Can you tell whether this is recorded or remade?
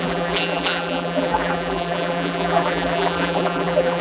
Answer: remade